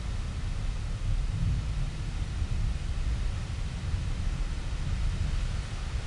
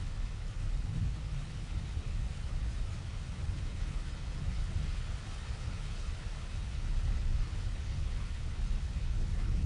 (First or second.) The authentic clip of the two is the first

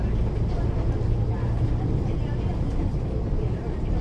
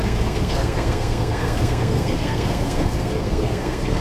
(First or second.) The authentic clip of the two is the first